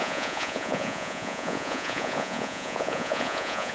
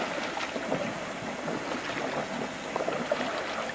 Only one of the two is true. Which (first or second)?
second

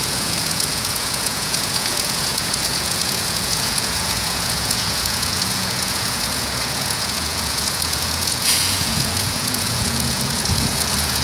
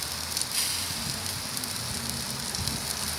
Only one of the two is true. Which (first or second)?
second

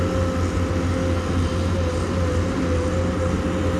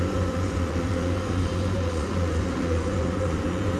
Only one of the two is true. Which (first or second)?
first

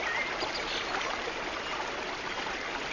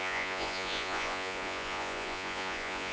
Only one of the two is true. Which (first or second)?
first